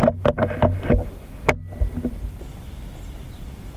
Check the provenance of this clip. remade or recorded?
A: recorded